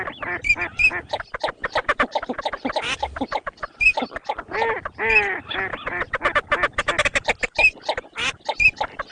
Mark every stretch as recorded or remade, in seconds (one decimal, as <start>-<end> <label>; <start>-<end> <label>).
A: 0.0-9.1 recorded